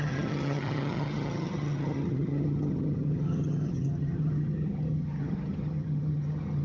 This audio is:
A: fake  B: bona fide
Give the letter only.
A